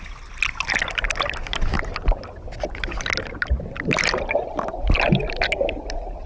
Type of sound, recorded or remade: recorded